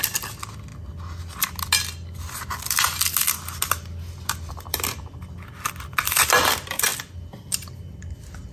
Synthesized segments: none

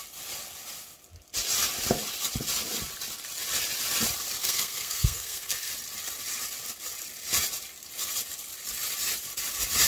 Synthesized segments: 4.4-5.7 (codec, SNAC)

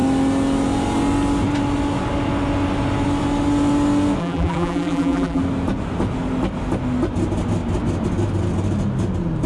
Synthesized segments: 4.2-5.4 (vocoder, BigVGAN v2)

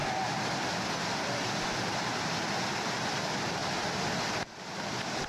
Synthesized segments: 0.0-3.6 (vocoder, BigVGAN v2); 4.6-5.3

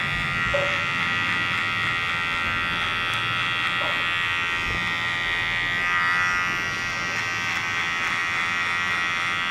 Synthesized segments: none

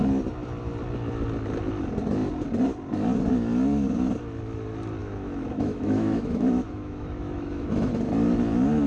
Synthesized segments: 5.0-7.9 (autoencoder, DAC-VAE)

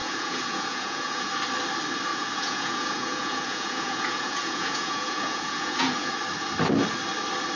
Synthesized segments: 0.0-1.3 (vocoder, Vocos); 2.1-6.1